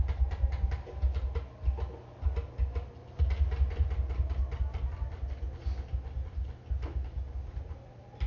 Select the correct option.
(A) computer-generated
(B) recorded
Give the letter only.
B